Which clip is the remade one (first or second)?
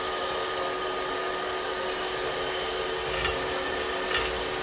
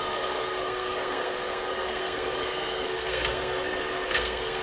second